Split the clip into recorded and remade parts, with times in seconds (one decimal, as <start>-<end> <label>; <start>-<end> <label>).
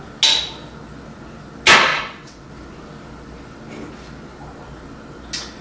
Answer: 0.0-1.9 recorded; 1.9-2.5 remade; 2.5-5.6 recorded